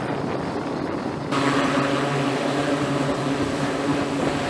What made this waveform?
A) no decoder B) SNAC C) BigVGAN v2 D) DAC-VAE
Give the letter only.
A